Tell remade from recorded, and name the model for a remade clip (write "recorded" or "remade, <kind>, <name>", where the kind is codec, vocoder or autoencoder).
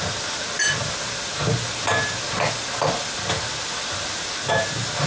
recorded